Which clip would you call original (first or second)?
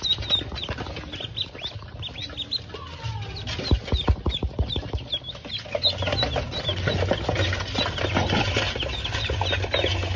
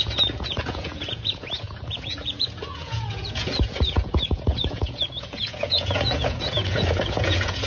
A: first